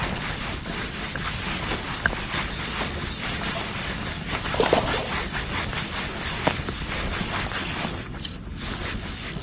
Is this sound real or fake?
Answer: real